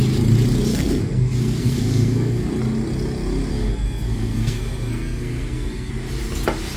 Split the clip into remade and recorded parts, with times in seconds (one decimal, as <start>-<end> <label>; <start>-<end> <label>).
0.0-0.7 recorded; 0.7-2.5 remade; 2.5-3.5 recorded; 3.5-5.9 remade; 5.9-6.8 recorded